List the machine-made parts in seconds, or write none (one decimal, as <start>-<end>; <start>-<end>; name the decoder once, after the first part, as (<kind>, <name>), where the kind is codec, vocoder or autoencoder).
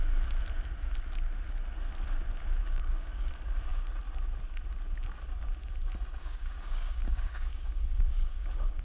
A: 2.6-3.3 (codec, DAC); 6.2-8.8